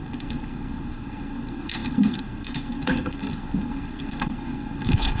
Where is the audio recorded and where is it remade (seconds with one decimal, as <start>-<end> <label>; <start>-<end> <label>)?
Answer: 0.0-5.2 remade

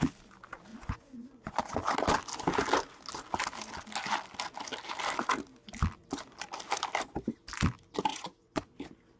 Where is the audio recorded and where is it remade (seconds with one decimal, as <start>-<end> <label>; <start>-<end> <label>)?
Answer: 0.0-0.7 recorded; 0.7-1.6 remade; 1.6-8.1 recorded; 8.1-8.7 remade; 8.7-9.2 recorded

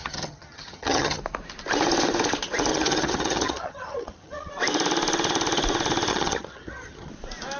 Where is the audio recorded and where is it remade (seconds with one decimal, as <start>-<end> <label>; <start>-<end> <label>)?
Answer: 0.0-1.2 remade; 1.2-2.7 recorded; 2.7-4.5 remade; 4.5-6.1 recorded; 6.1-7.1 remade; 7.1-7.6 recorded

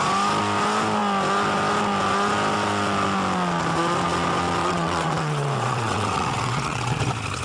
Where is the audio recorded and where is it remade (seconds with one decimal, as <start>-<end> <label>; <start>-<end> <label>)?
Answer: 0.0-4.6 recorded; 4.6-7.0 remade; 7.0-7.4 recorded

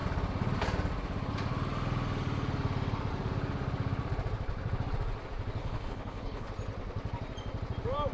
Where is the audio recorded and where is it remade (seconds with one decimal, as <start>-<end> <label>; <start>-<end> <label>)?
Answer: 0.0-5.6 recorded; 5.6-6.5 remade; 6.5-8.1 recorded

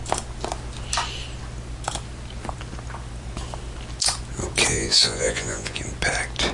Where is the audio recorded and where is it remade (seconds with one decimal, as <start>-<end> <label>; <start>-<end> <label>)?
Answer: 0.0-4.7 recorded; 4.7-5.8 remade; 5.8-6.5 recorded